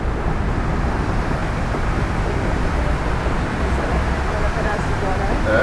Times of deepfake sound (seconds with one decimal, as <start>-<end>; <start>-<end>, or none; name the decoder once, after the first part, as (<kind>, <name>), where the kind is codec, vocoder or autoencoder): 0.0-1.4 (vocoder, BigVGAN v2); 4.6-5.6